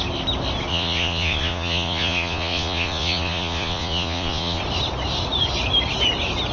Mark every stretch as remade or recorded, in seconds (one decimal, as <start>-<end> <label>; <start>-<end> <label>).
0.0-0.7 recorded; 0.7-4.6 remade; 4.6-6.5 recorded

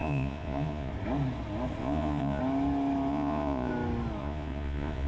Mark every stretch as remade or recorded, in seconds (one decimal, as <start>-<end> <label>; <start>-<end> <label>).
0.0-0.9 remade; 0.9-1.8 recorded; 1.8-2.4 remade; 2.4-3.1 recorded; 3.1-3.7 remade; 3.7-4.2 recorded; 4.2-5.1 remade

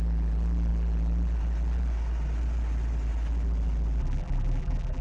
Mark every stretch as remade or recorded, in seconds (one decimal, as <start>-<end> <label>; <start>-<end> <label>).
0.0-4.0 recorded; 4.0-5.0 remade

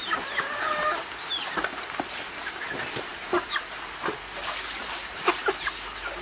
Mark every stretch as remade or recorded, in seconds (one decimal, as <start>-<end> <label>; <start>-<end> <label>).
0.0-6.2 recorded